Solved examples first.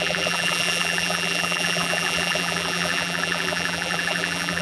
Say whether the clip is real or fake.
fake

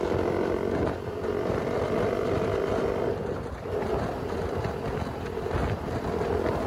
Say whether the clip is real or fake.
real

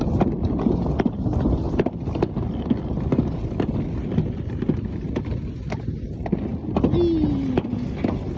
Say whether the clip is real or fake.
real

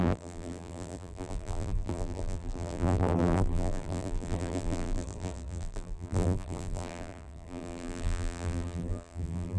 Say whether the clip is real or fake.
fake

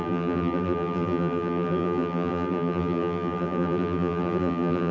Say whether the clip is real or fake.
fake